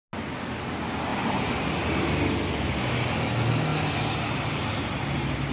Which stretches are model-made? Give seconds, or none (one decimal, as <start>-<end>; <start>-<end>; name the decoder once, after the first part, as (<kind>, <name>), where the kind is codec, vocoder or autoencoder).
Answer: none